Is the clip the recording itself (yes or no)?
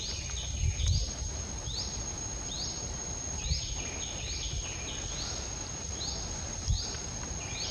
yes